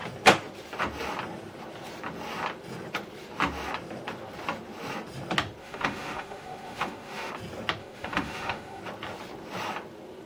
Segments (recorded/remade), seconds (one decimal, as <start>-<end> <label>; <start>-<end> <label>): 0.0-5.6 recorded; 5.6-7.3 remade; 7.3-7.8 recorded; 7.8-8.8 remade; 8.8-10.3 recorded